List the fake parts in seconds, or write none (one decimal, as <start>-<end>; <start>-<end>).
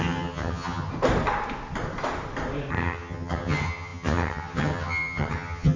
0.0-0.9; 2.7-5.8